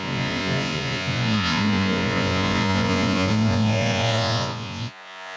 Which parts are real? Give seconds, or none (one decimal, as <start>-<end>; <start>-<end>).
none